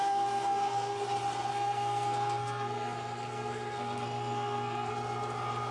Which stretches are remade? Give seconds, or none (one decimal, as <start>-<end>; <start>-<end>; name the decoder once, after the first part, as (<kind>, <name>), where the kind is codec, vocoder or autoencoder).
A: 0.0-1.0 (codec, SNAC); 1.5-4.9